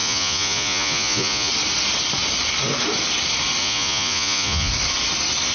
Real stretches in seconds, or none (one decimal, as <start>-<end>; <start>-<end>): 1.5-3.6; 4.7-5.5